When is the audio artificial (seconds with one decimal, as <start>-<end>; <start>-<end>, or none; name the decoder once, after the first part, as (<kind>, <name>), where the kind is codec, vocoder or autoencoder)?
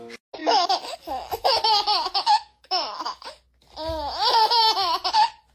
0.4-3.3 (codec, DAC)